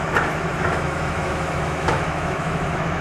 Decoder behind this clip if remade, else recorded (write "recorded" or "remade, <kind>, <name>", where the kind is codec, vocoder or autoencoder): remade, autoencoder, DAC-VAE